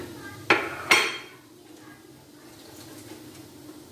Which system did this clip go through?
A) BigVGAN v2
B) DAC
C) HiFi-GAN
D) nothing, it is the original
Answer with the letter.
D